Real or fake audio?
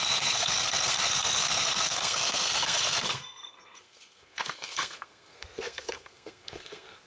fake